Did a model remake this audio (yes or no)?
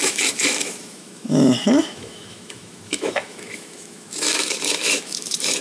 yes